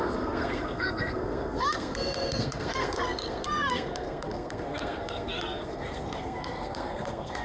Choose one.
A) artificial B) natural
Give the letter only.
A